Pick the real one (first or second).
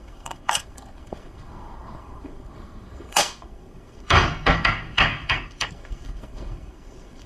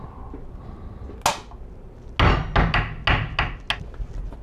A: second